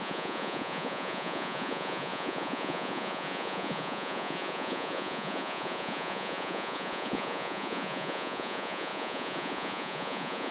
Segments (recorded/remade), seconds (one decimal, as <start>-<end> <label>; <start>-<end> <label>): 0.0-10.5 remade